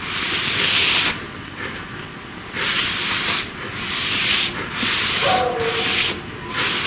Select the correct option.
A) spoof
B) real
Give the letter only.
B